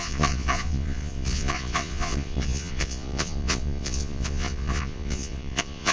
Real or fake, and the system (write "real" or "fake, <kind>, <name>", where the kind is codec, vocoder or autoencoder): fake, vocoder, Vocos